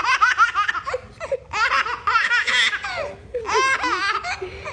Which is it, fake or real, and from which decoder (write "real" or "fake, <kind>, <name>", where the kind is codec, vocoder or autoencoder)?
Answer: real